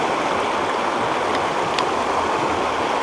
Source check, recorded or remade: recorded